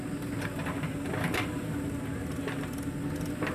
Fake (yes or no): no